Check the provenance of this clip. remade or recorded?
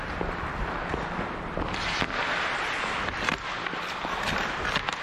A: recorded